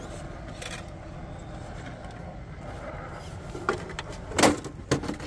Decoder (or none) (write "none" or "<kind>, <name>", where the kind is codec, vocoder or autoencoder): none